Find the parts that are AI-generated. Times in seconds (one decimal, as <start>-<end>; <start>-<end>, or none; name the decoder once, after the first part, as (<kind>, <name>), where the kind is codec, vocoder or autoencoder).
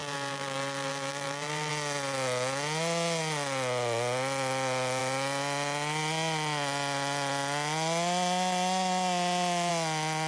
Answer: 0.0-1.7 (vocoder, BigVGAN v2)